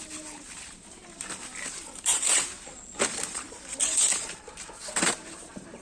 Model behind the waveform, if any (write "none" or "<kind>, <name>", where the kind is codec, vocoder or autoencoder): vocoder, BigVGAN v2